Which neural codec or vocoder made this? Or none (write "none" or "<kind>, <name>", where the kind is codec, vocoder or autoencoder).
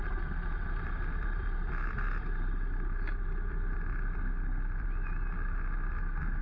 none